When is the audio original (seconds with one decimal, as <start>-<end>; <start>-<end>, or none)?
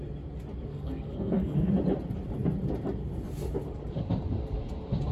0.0-0.7; 1.7-5.1